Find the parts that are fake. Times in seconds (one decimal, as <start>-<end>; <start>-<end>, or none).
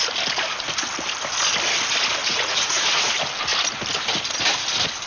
2.2-3.0